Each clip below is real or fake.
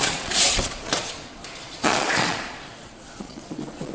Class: fake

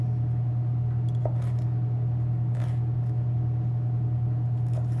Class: real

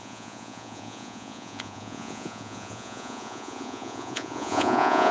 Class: fake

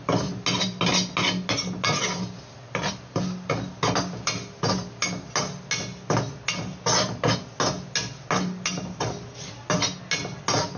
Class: real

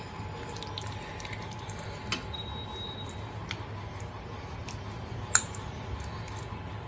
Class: real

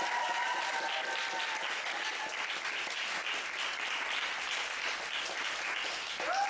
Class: real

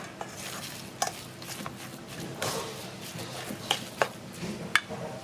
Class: real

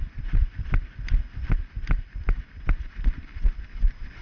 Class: real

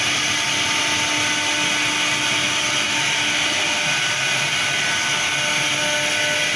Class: real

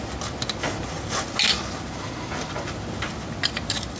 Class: real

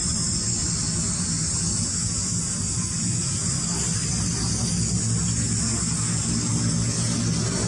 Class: real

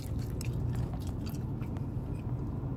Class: real